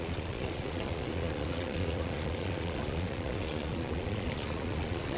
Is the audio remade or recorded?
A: remade